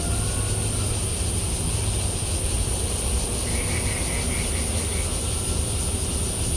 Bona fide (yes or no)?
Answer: yes